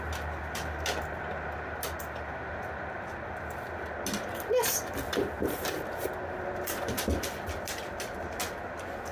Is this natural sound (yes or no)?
yes